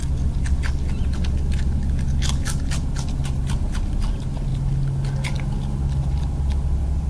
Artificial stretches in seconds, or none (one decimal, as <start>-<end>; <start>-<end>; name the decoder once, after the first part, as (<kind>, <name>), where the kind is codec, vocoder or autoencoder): none